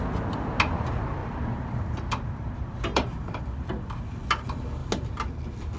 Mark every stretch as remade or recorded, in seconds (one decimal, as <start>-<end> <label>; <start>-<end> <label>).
0.0-1.2 recorded; 1.2-3.4 remade; 3.4-5.8 recorded